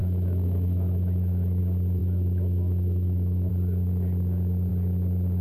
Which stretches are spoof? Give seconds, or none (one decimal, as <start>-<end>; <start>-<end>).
0.0-1.6; 2.0-3.5